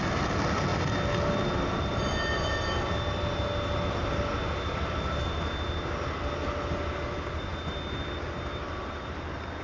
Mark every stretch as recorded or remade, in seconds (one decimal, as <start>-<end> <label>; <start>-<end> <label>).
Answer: 0.0-9.6 recorded